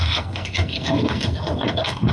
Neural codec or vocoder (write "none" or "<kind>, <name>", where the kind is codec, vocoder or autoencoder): codec, SNAC